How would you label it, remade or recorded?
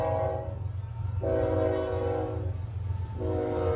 recorded